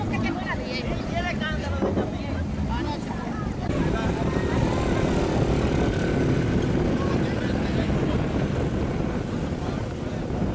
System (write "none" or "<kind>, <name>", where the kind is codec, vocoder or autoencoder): none